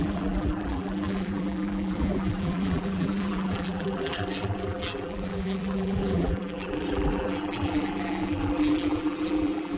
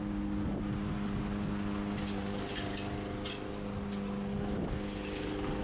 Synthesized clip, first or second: first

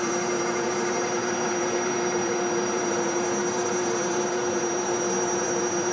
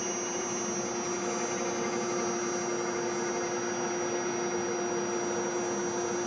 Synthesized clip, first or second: first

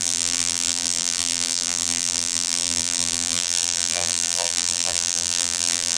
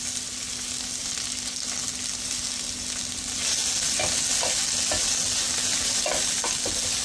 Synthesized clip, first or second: first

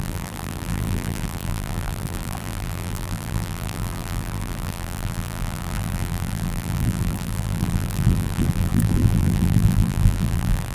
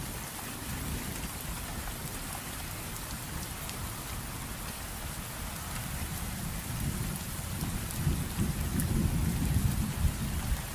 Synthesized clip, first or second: first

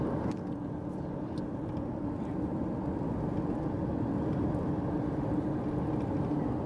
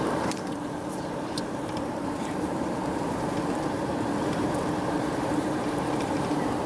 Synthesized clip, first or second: second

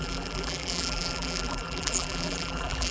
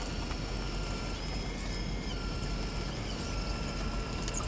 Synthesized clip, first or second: first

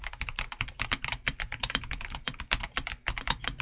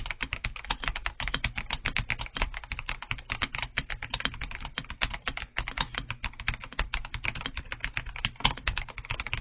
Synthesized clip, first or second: first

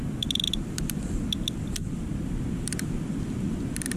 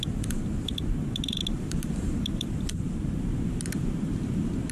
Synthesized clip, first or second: second